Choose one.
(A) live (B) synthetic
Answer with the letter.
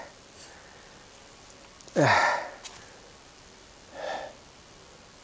A